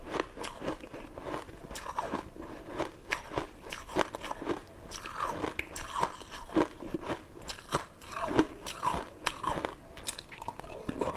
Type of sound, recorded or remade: recorded